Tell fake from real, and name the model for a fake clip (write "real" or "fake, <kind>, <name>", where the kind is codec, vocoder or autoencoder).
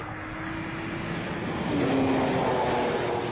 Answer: real